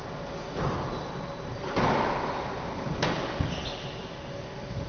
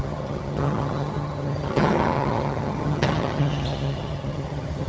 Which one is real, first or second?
first